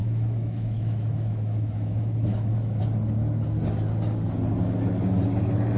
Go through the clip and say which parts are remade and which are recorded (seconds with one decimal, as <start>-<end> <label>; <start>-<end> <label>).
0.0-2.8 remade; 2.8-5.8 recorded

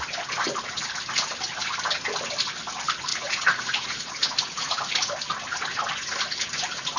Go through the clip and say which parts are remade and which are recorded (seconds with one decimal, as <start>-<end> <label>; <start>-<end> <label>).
0.0-3.1 recorded; 3.1-4.9 remade; 4.9-7.0 recorded

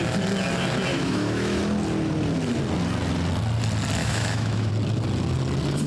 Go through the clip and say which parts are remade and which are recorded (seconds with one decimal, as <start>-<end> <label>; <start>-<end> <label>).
0.0-0.9 recorded; 0.9-1.6 remade; 1.6-4.0 recorded; 4.0-4.7 remade; 4.7-5.9 recorded

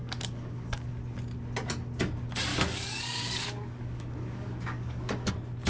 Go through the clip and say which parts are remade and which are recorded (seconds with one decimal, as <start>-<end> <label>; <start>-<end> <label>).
0.0-0.9 remade; 0.9-2.5 recorded; 2.5-5.3 remade; 5.3-5.7 recorded

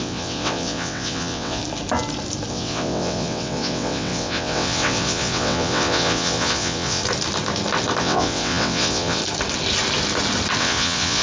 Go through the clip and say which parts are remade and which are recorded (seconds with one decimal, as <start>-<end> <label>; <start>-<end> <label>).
0.0-1.6 remade; 1.6-2.5 recorded; 2.5-7.0 remade; 7.0-8.0 recorded; 8.0-9.2 remade; 9.2-10.6 recorded; 10.6-11.2 remade

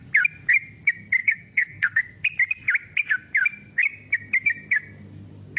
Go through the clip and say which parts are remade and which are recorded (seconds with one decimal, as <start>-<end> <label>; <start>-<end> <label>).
0.0-1.2 recorded; 1.2-2.0 remade; 2.0-5.6 recorded